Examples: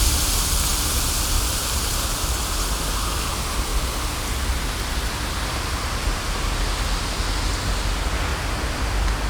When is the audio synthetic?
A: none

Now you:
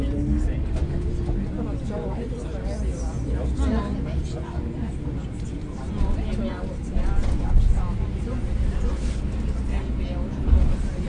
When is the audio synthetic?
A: none